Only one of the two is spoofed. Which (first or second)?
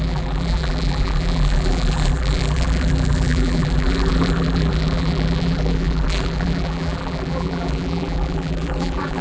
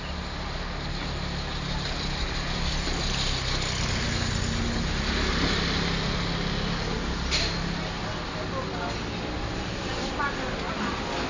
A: first